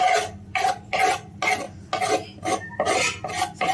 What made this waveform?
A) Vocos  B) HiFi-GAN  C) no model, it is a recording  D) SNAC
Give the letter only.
C